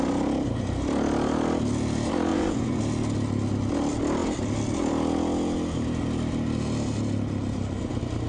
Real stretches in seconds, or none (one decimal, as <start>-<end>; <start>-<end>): 0.0-2.3; 2.8-8.3